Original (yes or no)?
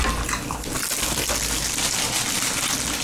yes